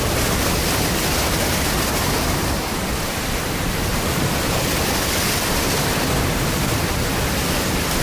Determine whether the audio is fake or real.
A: real